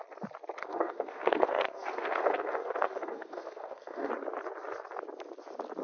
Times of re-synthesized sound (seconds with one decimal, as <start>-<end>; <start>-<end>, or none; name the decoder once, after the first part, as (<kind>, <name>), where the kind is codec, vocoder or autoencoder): 0.6-4.1 (codec, SNAC)